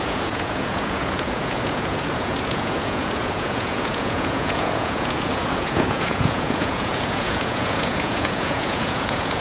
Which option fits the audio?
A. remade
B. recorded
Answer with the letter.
A